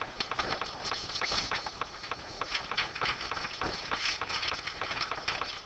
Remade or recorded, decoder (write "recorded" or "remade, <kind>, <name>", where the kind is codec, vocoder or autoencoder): recorded